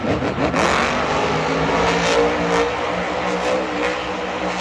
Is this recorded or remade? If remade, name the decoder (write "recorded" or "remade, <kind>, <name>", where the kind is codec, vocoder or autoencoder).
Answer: recorded